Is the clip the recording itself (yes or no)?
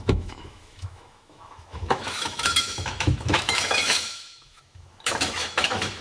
no